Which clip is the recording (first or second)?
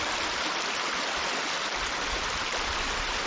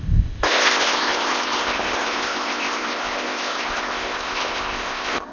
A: first